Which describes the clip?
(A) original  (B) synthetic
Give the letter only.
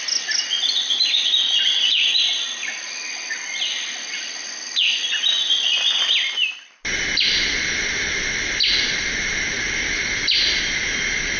A